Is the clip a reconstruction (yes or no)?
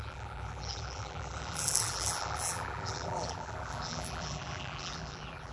yes